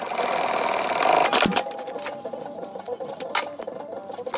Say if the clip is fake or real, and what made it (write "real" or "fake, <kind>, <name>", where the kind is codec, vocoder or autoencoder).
real